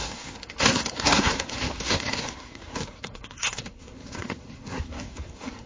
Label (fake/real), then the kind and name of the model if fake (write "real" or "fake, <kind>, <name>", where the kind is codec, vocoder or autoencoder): fake, codec, SNAC